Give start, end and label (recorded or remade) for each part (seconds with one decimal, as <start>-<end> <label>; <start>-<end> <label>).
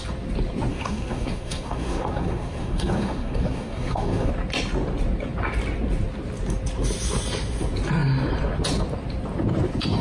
0.0-0.7 recorded; 0.7-4.3 remade; 4.3-10.0 recorded